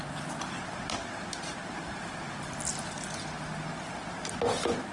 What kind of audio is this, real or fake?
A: real